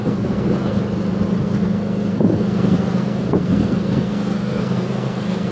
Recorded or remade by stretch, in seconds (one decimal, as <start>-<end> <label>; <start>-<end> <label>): 0.0-0.8 remade; 0.8-1.4 recorded; 1.4-5.5 remade